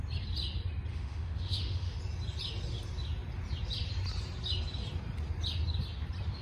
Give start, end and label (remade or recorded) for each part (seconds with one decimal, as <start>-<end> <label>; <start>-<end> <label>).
0.0-0.9 recorded; 0.9-2.0 remade; 2.0-6.4 recorded